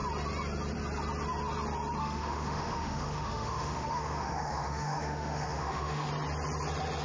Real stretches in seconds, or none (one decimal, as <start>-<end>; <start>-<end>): 0.0-2.0; 6.1-7.0